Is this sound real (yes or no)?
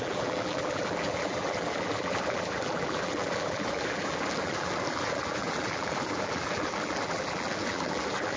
no